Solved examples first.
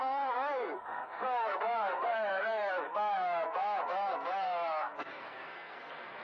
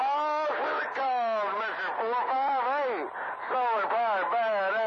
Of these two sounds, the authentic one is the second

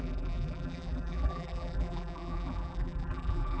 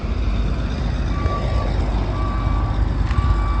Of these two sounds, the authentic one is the second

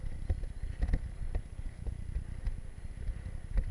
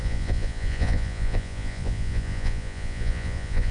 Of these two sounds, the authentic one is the first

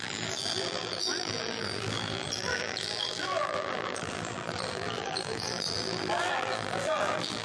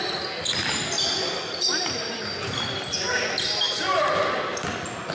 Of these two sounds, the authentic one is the second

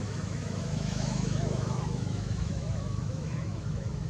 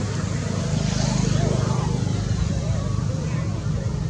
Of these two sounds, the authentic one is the second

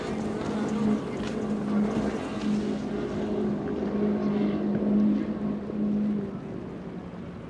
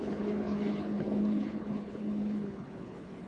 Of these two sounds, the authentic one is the first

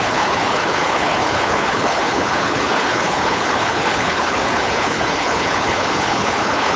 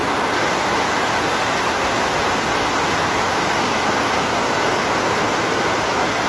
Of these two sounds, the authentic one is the second